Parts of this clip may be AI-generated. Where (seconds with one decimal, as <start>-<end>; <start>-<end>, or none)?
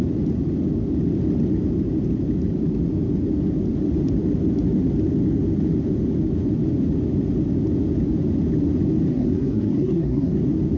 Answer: 9.1-10.3